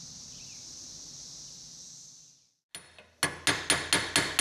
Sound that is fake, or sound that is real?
real